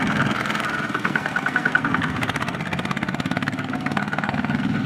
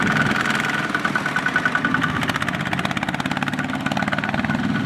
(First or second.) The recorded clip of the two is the second